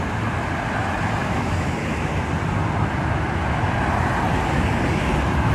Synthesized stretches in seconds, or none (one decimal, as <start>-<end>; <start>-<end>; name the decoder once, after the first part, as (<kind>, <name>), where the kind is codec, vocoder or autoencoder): 1.2-2.1 (autoencoder, DAC-VAE)

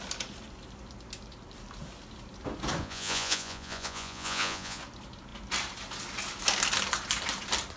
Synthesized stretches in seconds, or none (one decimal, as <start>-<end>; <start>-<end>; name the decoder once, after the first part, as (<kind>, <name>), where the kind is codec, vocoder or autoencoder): 2.8-4.8 (vocoder, Vocos)

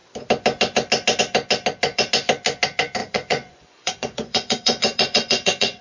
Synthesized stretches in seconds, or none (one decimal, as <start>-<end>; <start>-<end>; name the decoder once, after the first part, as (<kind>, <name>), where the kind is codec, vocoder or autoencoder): 3.0-5.8 (vocoder, Vocos)

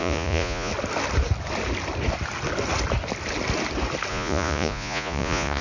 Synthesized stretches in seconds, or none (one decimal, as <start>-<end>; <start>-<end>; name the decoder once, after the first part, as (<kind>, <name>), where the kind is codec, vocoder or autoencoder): 0.0-0.7 (vocoder, Vocos); 4.1-5.6